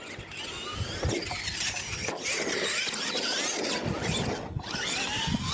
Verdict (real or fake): real